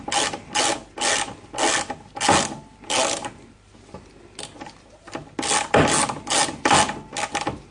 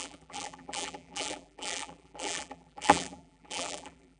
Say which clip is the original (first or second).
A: first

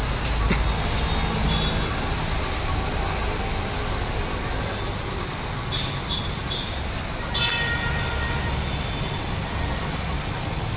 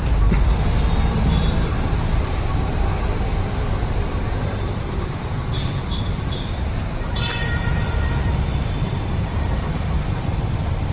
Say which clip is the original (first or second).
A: first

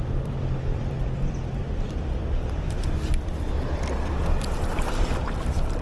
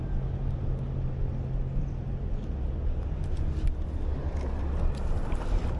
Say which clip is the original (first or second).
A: second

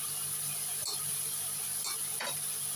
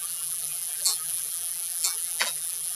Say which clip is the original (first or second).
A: first